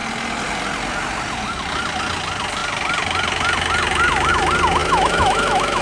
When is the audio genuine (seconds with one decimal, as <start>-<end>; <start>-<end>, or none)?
0.0-4.8